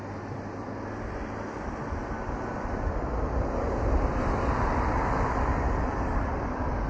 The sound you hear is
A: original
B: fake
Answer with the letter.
A